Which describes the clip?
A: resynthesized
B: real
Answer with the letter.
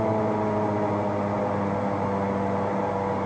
B